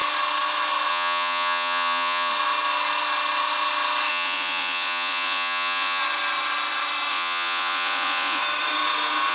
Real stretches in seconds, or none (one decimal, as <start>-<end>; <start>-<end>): 0.0-0.9; 2.3-4.1; 6.0-7.1; 8.4-9.3